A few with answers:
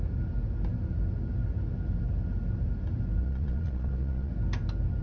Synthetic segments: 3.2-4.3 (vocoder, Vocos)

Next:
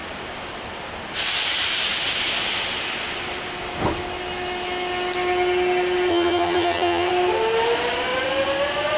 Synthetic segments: 6.1-7.1 (vocoder, HiFi-GAN)

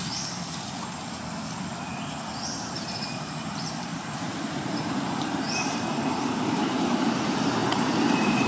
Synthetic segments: 2.8-8.5 (vocoder, BigVGAN v2)

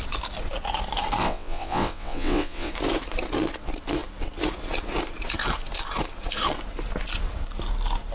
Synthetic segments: 1.2-2.7 (vocoder, WaveNeXt)